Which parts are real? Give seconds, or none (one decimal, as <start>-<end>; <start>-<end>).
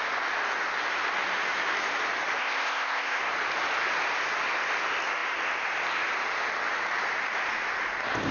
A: 0.0-2.4; 3.2-8.3